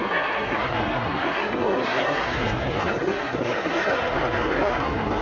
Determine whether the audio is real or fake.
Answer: fake